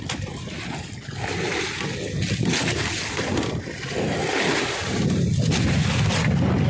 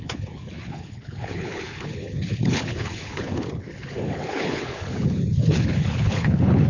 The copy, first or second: second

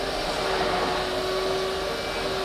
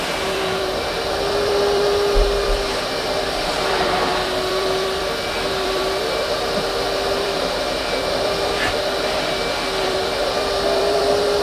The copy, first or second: second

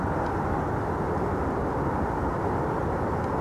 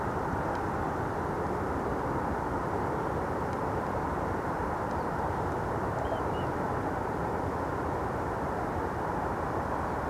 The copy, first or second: second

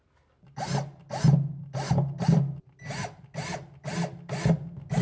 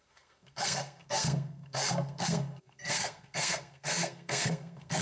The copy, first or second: second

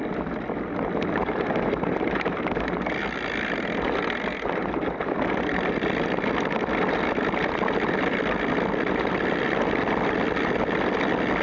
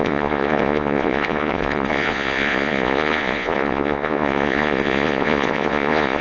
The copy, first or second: second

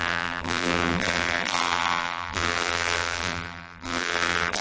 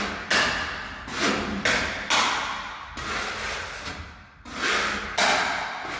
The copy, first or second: first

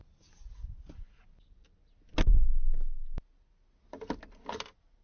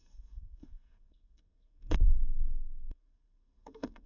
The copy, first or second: second